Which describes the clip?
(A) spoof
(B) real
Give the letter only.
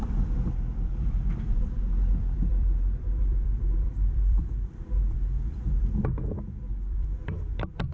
A